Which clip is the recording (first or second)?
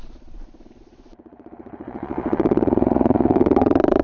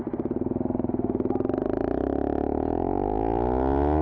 second